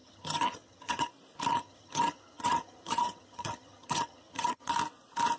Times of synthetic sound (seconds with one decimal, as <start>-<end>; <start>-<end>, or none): 0.0-1.1; 1.5-4.7